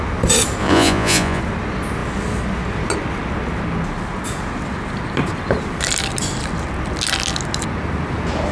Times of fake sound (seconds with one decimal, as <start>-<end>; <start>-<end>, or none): 0.6-1.4